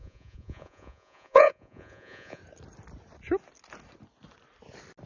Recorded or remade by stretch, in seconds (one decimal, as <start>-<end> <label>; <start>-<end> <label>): 0.0-2.4 remade; 2.4-5.1 recorded